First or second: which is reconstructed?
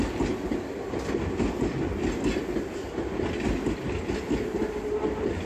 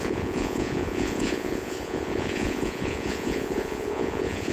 second